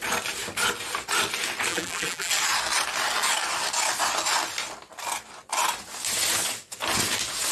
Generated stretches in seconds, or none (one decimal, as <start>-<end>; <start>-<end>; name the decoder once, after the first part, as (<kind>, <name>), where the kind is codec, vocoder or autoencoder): 1.7-2.3 (vocoder, BigVGAN v2)